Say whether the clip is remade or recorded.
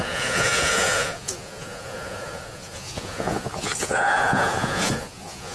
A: remade